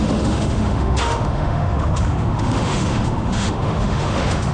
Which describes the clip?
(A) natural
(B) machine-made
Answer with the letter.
B